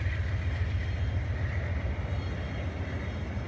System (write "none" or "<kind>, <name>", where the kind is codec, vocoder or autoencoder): none